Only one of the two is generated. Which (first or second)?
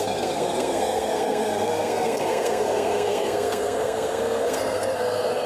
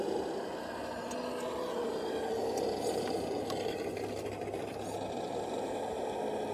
first